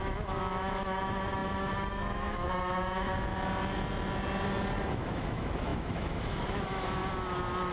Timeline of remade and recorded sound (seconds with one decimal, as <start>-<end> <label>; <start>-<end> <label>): 0.0-3.3 remade; 3.3-4.9 recorded; 4.9-7.0 remade; 7.0-7.7 recorded